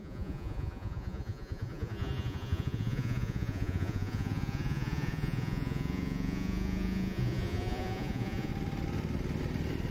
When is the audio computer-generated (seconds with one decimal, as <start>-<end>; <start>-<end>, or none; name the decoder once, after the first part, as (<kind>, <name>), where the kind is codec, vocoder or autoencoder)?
0.0-8.5 (vocoder, Vocos)